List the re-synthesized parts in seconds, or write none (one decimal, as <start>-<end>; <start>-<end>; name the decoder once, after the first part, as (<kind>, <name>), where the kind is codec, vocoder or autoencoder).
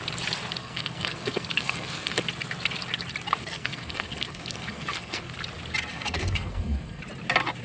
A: 0.6-2.2 (codec, SNAC); 3.4-5.3; 5.9-7.0